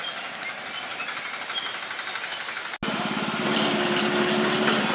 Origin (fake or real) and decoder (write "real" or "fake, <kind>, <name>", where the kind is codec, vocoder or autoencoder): real